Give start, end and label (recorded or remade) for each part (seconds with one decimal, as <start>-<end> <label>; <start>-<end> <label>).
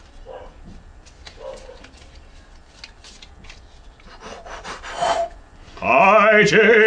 0.0-5.0 recorded; 5.0-6.0 remade; 6.0-6.9 recorded